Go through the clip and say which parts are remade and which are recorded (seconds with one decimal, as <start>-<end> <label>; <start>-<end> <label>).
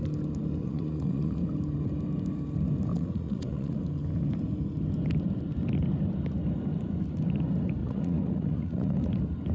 0.0-0.6 recorded; 0.6-1.4 remade; 1.4-2.9 recorded; 2.9-3.8 remade; 3.8-7.8 recorded; 7.8-9.1 remade; 9.1-9.5 recorded